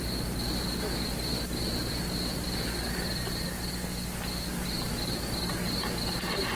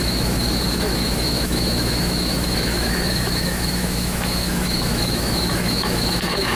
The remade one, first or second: second